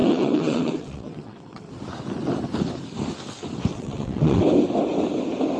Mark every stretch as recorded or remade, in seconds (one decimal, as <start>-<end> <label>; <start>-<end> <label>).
0.0-1.7 remade; 1.7-3.7 recorded; 3.7-4.4 remade; 4.4-5.6 recorded